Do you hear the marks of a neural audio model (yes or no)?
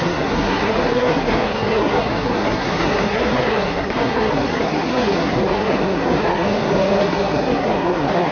yes